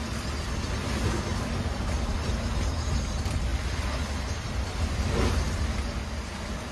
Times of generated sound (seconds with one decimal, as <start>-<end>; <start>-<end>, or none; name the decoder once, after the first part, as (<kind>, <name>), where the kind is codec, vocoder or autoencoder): 1.3-2.3 (vocoder, BigVGAN v2)